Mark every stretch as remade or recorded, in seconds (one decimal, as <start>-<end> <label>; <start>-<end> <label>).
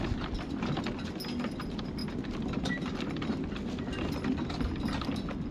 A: 0.0-5.5 recorded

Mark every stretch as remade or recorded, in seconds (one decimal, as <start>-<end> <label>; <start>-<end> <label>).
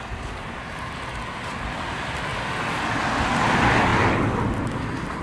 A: 0.0-5.2 recorded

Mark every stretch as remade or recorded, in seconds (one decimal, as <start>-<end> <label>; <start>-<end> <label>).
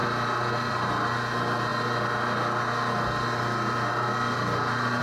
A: 0.0-5.0 recorded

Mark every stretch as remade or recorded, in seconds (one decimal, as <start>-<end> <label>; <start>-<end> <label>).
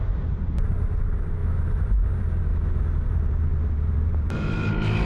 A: 0.0-1.4 remade; 1.4-1.9 recorded; 1.9-2.5 remade; 2.5-3.1 recorded; 3.1-5.1 remade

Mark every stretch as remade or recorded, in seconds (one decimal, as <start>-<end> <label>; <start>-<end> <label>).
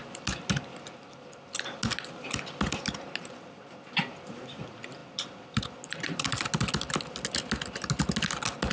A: 0.0-8.7 recorded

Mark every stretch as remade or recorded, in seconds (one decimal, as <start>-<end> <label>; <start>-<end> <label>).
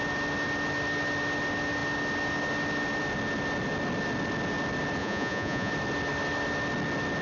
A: 0.0-5.0 recorded; 5.0-5.7 remade; 5.7-7.2 recorded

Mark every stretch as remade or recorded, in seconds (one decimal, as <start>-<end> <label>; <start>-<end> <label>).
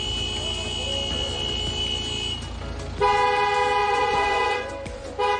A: 0.0-3.8 recorded; 3.8-4.7 remade; 4.7-5.4 recorded